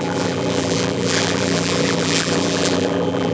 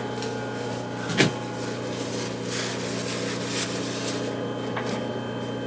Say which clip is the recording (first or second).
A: second